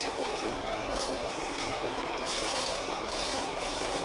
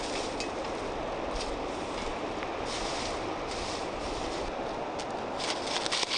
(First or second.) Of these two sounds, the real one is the second